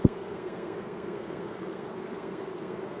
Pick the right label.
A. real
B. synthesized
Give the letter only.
B